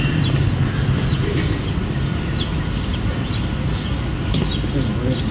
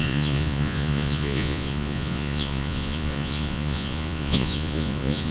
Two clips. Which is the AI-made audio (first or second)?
second